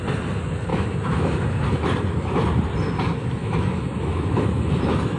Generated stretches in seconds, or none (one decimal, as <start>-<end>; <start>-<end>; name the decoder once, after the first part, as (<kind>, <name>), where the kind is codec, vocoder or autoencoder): 0.7-1.8 (autoencoder, DAC-VAE); 3.4-5.2